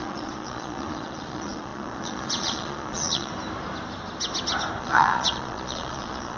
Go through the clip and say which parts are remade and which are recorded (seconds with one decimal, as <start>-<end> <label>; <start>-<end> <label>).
0.0-3.3 remade; 3.3-4.8 recorded; 4.8-6.4 remade